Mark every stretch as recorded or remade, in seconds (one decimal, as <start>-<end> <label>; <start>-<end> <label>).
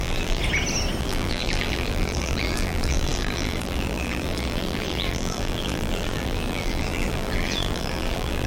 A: 0.0-0.4 remade; 0.4-1.0 recorded; 1.0-8.5 remade